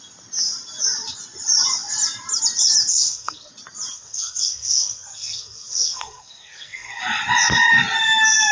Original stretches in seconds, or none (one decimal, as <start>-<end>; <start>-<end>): 0.0-2.9; 3.5-3.9; 7.0-8.5

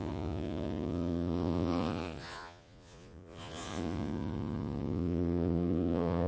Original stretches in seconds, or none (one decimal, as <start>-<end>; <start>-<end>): none